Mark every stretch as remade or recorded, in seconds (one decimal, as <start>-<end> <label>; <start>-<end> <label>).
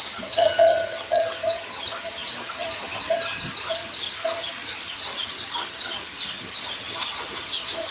0.0-7.9 remade